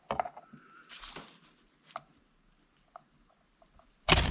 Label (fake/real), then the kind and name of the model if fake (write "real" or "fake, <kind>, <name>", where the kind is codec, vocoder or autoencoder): real